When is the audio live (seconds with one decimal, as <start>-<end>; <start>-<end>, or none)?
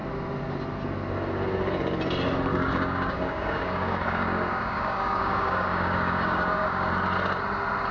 0.0-2.5; 6.9-7.9